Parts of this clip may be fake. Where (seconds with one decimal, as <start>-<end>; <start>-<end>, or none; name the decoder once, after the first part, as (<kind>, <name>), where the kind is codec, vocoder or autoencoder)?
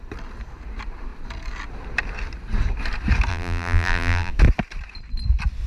3.3-4.3 (vocoder, BigVGAN v2)